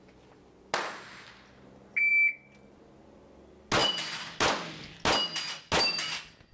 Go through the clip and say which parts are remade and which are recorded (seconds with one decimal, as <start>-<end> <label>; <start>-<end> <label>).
0.0-6.5 recorded